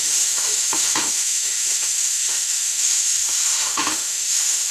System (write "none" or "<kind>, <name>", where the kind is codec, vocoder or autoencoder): autoencoder, DAC-VAE